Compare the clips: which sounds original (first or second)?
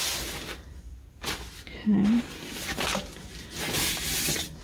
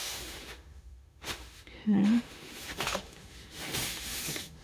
first